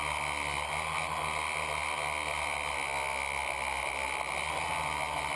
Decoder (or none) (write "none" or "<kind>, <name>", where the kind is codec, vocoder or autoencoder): none